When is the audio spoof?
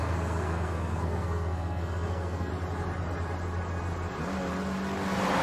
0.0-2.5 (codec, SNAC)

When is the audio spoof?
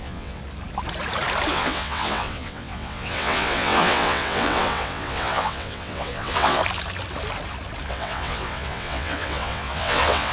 0.0-0.4 (vocoder, WaveNeXt); 1.5-6.6; 7.9-10.3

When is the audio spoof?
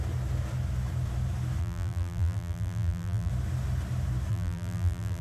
1.6-3.3 (vocoder, BigVGAN v2); 4.3-5.2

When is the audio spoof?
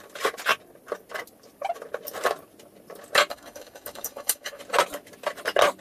3.3-4.6 (codec, DAC)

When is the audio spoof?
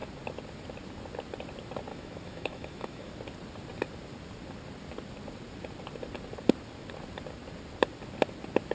1.9-3.1 (autoencoder, DAC-VAE)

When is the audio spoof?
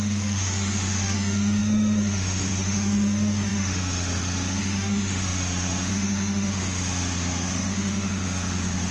0.0-8.9 (autoencoder, DAC-VAE)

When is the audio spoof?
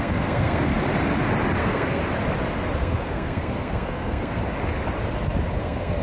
0.0-0.7 (codec, SNAC); 1.6-2.0; 2.8-4.4; 5.6-6.0